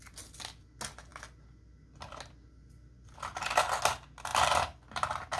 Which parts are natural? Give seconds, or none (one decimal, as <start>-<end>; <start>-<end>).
0.0-5.4